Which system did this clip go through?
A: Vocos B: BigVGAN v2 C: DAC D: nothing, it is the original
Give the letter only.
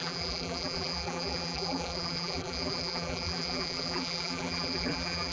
B